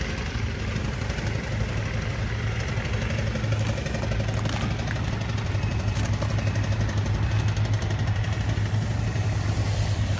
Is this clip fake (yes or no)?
no